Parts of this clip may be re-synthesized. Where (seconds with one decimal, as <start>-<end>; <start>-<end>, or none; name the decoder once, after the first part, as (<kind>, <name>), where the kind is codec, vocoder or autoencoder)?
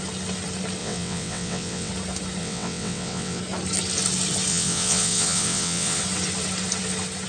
0.8-1.9 (vocoder, WaveNeXt); 2.4-3.4; 4.5-6.0